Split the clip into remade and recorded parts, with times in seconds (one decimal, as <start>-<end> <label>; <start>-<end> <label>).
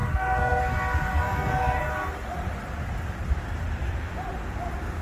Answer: 0.0-0.6 remade; 0.6-1.1 recorded; 1.1-1.9 remade; 1.9-5.0 recorded